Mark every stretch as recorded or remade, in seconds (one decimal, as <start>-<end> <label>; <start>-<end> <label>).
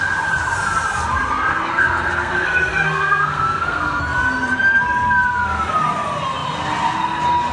0.0-1.5 recorded; 1.5-4.0 remade; 4.0-7.5 recorded